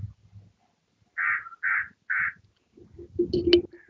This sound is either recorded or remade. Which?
recorded